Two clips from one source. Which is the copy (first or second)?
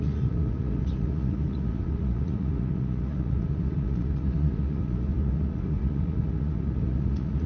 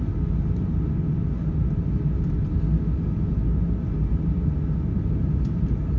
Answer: first